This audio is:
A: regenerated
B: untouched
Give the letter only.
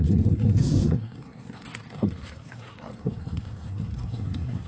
A